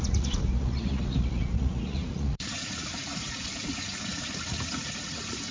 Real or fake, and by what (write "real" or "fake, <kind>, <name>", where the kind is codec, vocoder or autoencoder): fake, vocoder, Vocos